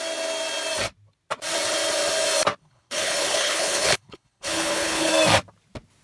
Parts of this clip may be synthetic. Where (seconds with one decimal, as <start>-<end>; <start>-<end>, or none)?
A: 2.6-5.1